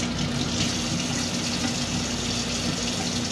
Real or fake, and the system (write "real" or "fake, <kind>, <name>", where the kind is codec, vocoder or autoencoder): real